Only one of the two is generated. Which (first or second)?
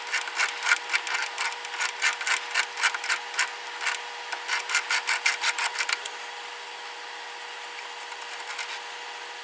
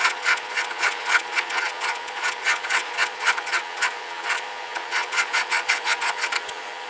second